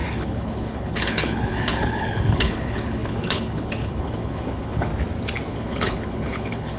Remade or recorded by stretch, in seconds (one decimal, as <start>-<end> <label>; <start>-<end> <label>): 0.0-4.9 remade; 4.9-5.5 recorded; 5.5-6.8 remade